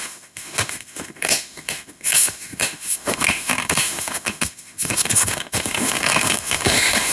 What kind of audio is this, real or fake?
fake